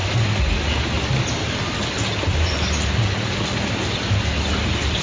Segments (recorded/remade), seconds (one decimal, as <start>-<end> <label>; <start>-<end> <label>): 0.0-5.0 recorded

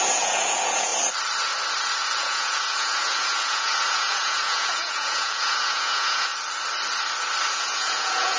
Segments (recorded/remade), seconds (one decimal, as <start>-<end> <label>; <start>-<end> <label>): 0.0-0.9 remade; 0.9-2.2 recorded; 2.2-6.3 remade; 6.3-7.5 recorded; 7.5-8.4 remade

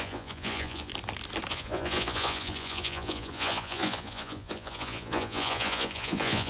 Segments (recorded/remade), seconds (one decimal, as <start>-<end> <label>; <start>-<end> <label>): 0.0-0.9 remade; 0.9-1.5 recorded; 1.5-6.5 remade

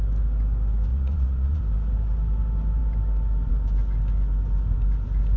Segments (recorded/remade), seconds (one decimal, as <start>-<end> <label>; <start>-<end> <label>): 0.0-0.9 recorded; 0.9-1.6 remade; 1.6-5.4 recorded

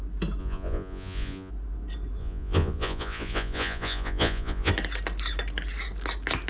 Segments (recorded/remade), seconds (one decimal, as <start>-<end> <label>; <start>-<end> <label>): 0.0-0.4 recorded; 0.4-1.5 remade; 1.5-2.2 recorded; 2.2-4.7 remade; 4.7-6.5 recorded